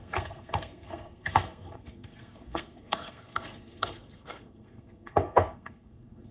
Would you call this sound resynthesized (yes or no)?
yes